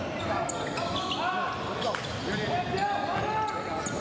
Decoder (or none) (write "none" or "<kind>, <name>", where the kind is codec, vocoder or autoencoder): none